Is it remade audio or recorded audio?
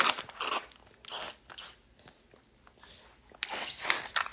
recorded